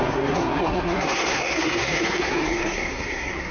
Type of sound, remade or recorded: remade